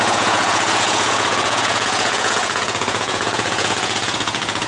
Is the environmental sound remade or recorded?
remade